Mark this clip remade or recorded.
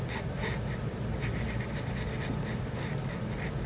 recorded